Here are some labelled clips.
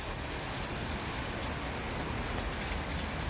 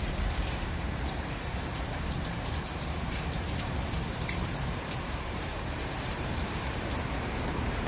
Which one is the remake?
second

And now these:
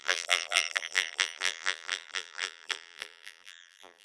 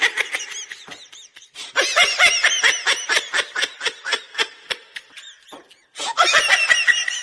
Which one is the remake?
first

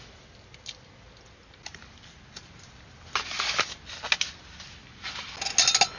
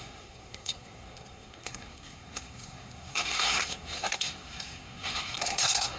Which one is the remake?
second